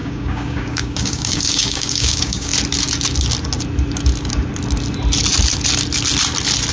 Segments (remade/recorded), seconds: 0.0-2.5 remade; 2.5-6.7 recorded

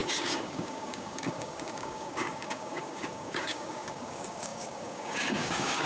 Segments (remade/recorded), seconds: 0.0-5.9 remade

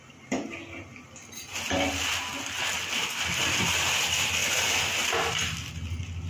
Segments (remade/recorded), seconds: 0.0-6.3 recorded

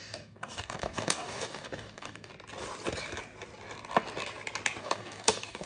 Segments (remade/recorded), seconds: 0.0-2.3 remade; 2.3-4.8 recorded; 4.8-5.7 remade

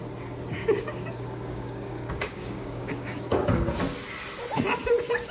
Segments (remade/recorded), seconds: 0.0-0.6 recorded; 0.6-3.8 remade; 3.8-5.3 recorded

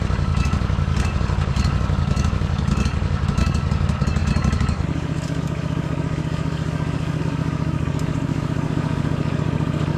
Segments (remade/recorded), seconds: 0.0-10.0 remade

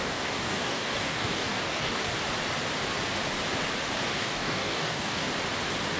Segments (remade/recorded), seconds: 0.0-2.1 remade; 2.1-4.1 recorded; 4.1-5.3 remade; 5.3-6.0 recorded